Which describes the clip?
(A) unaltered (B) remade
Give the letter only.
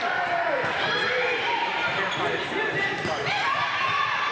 B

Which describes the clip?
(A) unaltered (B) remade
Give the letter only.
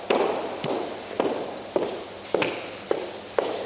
A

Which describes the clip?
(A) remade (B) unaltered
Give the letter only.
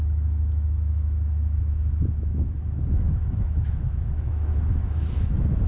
A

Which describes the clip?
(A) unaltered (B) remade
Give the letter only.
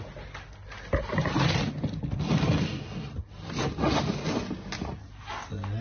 A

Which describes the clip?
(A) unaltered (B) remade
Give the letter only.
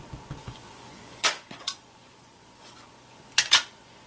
B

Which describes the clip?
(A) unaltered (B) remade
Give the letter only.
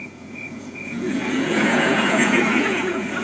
B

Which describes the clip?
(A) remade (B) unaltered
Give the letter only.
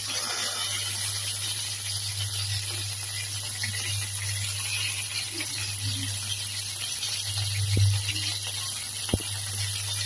B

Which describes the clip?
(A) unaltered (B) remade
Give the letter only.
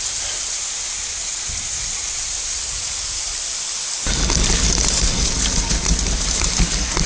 A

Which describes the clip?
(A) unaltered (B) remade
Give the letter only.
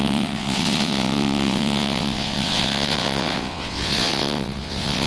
B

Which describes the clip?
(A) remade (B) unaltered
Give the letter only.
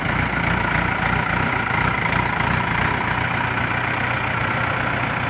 B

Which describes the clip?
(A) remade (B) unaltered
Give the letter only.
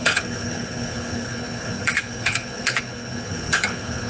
A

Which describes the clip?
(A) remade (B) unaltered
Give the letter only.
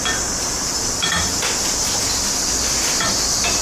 B